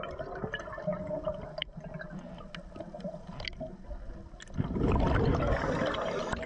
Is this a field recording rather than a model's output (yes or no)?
yes